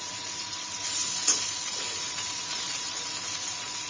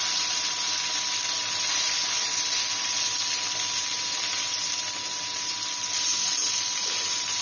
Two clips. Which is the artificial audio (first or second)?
first